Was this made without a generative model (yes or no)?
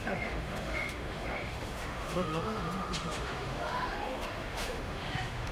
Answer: no